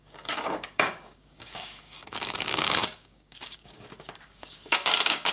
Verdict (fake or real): fake